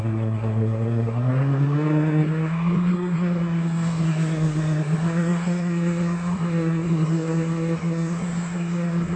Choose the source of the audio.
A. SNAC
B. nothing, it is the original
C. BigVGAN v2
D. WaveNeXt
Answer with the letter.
A